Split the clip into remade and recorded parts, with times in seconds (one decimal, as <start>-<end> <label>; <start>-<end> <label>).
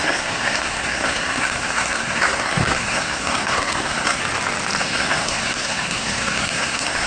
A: 0.0-4.2 remade; 4.2-4.8 recorded; 4.8-7.1 remade